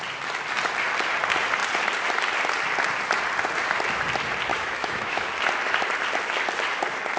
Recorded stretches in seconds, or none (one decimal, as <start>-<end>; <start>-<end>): 0.0-4.5; 5.3-7.2